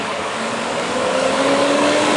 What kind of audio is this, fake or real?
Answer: fake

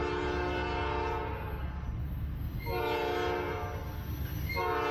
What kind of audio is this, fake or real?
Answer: real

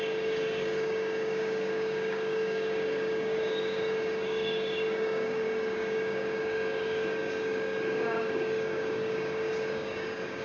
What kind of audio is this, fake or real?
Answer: fake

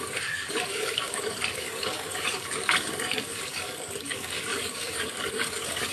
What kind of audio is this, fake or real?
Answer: fake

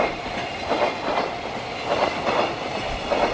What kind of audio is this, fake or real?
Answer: real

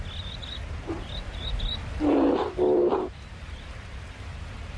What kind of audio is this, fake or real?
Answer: real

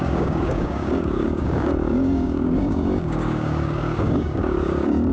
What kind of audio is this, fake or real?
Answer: fake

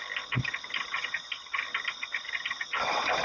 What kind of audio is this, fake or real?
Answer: real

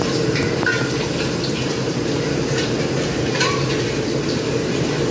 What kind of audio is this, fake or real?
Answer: real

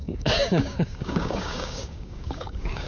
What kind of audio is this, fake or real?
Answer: fake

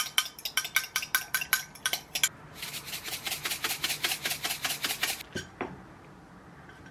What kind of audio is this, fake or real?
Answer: real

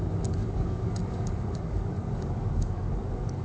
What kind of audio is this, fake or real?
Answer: fake